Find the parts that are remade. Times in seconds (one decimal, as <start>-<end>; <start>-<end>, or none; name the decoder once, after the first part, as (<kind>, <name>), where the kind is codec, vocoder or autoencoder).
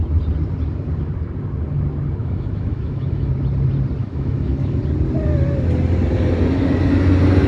2.2-3.3 (autoencoder, DAC-VAE); 4.0-4.8